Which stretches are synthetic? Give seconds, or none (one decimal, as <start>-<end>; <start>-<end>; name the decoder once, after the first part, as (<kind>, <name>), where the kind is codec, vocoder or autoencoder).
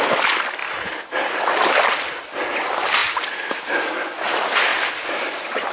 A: 0.6-1.7 (vocoder, BigVGAN v2); 3.0-3.9